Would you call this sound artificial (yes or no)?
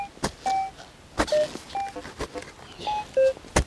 no